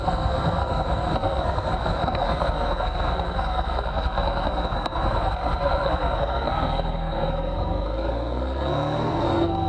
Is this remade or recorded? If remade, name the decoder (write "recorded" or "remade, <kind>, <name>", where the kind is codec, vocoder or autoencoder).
remade, codec, SNAC